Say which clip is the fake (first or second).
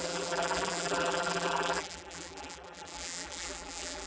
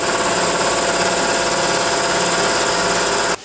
first